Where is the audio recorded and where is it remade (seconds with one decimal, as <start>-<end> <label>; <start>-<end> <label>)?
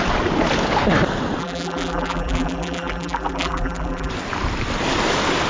0.0-1.4 recorded; 1.4-4.1 remade; 4.1-5.5 recorded